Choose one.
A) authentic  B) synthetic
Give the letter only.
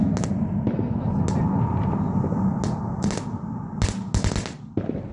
A